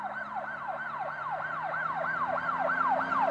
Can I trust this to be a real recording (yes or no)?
yes